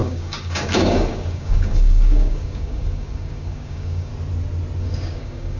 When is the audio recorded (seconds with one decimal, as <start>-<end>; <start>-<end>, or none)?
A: 4.1-4.8